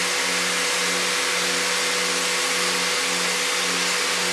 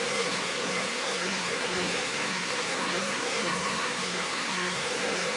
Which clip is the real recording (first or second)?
first